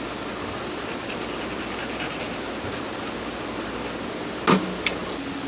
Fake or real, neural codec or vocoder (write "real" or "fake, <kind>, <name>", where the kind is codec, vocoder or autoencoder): real